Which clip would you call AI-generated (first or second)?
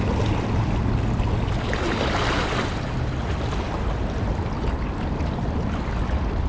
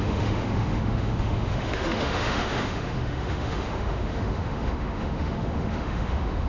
second